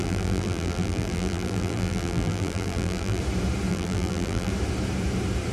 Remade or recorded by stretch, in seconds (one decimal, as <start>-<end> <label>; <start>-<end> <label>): 0.0-3.2 remade; 3.2-3.7 recorded; 3.7-4.5 remade; 4.5-5.5 recorded